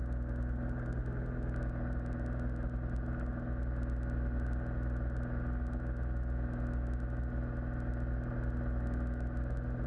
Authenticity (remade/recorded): recorded